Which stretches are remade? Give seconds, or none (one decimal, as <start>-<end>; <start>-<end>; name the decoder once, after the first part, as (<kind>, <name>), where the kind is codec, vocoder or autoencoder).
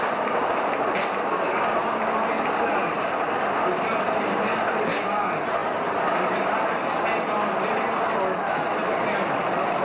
none